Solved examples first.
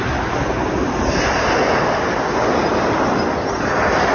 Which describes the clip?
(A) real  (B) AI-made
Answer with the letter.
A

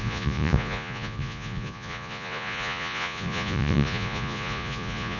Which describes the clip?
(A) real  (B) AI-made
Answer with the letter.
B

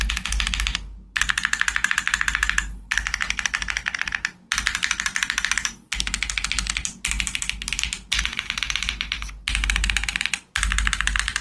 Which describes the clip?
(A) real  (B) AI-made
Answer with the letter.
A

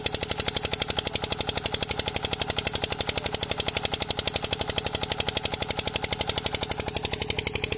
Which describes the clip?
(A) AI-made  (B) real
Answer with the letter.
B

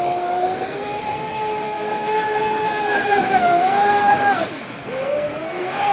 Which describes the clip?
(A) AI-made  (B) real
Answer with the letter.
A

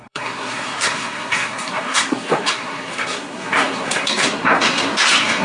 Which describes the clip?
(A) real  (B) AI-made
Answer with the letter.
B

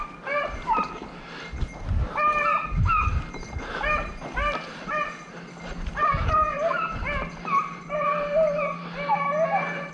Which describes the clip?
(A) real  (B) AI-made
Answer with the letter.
A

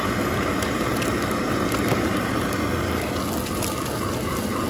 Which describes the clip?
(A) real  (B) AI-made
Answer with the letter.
A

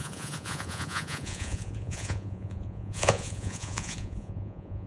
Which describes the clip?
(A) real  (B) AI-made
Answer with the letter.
B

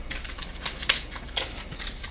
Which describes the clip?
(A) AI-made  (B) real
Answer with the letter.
B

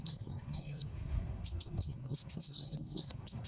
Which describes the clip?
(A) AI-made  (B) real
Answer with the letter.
A